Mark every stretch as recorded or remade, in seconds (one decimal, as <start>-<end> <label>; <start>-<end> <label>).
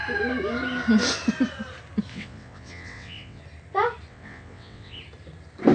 0.0-2.1 recorded; 2.1-3.4 remade; 3.4-4.1 recorded; 4.1-5.0 remade; 5.0-5.7 recorded